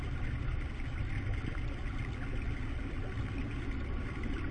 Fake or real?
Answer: real